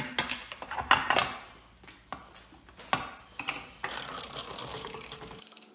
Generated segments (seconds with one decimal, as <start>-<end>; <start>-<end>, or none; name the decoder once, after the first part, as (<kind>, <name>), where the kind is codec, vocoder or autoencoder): 4.7-5.7 (codec, DAC)